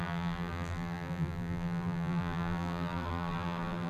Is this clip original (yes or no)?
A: no